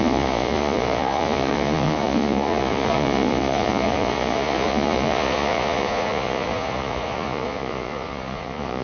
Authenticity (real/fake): fake